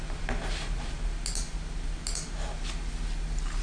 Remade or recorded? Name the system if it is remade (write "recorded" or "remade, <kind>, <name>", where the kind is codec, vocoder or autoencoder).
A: recorded